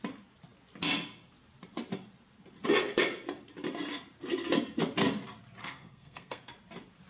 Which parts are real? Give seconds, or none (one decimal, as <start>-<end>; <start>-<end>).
0.0-5.6; 6.5-7.1